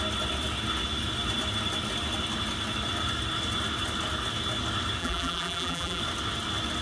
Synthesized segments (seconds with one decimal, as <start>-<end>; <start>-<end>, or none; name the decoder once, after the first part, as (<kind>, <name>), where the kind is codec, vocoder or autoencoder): 5.0-6.0 (vocoder, BigVGAN v2)